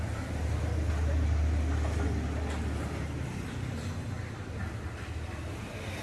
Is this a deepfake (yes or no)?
no